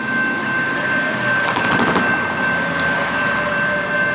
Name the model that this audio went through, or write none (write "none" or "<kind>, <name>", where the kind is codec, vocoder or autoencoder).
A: none